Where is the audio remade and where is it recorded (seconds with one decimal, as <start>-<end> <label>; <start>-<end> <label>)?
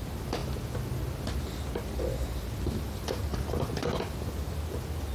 0.0-5.1 recorded